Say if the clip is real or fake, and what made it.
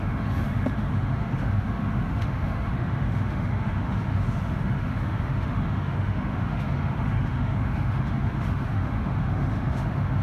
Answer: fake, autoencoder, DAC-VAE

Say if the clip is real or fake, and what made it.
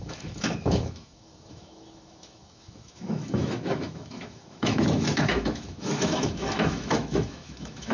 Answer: fake, autoencoder, DAC-VAE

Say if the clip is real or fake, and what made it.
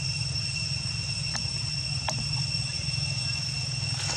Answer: real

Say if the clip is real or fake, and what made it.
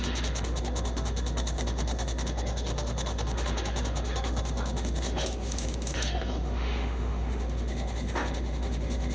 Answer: fake, autoencoder, DAC-VAE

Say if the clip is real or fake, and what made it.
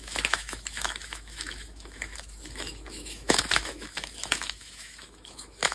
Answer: fake, autoencoder, DAC-VAE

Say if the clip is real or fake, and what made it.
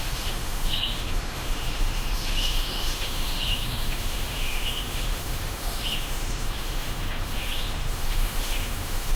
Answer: fake, autoencoder, DAC-VAE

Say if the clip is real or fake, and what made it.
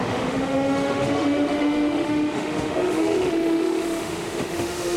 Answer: fake, autoencoder, DAC-VAE